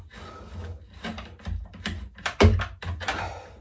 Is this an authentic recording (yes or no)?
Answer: yes